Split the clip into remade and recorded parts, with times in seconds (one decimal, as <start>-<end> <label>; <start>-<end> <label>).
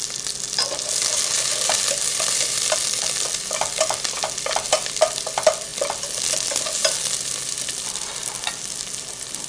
0.0-9.5 recorded